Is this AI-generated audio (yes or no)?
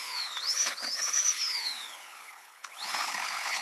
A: yes